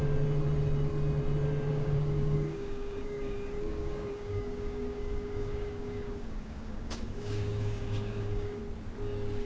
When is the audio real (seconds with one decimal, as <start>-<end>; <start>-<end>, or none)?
0.0-1.7; 8.6-9.5